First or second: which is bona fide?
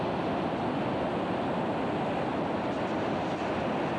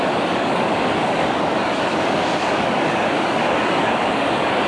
first